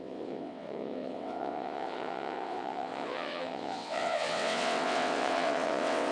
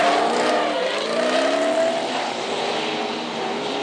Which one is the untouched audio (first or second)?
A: second